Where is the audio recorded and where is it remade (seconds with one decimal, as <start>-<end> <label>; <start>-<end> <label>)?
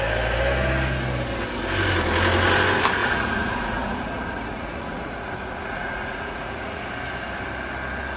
0.0-3.0 recorded; 3.0-6.8 remade; 6.8-8.2 recorded